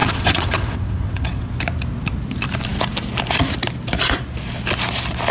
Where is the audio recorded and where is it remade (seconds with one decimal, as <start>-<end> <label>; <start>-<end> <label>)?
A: 0.0-1.5 remade; 1.5-5.3 recorded

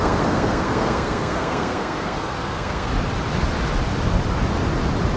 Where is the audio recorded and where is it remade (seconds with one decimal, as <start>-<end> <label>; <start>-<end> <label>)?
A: 0.0-2.9 remade; 2.9-5.2 recorded

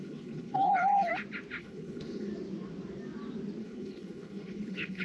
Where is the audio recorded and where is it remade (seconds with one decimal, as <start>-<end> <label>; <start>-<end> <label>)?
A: 0.0-1.1 remade; 1.1-1.6 recorded; 1.6-2.3 remade; 2.3-3.6 recorded; 3.6-5.0 remade

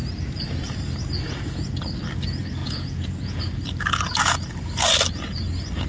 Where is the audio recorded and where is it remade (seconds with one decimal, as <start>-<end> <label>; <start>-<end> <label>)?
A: 0.0-2.6 recorded; 2.6-3.4 remade; 3.4-5.9 recorded

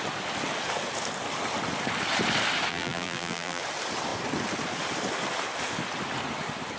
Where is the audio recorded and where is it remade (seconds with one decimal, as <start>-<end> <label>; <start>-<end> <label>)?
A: 0.0-2.7 recorded; 2.7-3.6 remade; 3.6-6.8 recorded

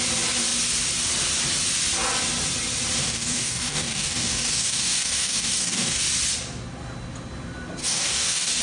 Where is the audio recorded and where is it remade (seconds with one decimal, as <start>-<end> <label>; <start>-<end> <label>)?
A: 0.0-3.0 recorded; 3.0-6.0 remade; 6.0-7.8 recorded; 7.8-8.6 remade